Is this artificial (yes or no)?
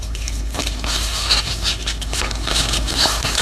yes